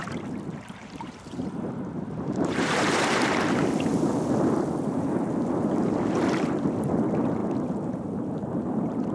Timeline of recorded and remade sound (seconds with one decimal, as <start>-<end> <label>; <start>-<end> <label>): 0.0-3.4 remade; 3.4-9.1 recorded